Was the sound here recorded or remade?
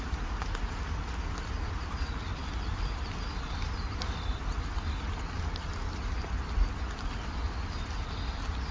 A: recorded